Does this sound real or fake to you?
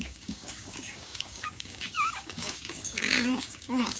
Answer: fake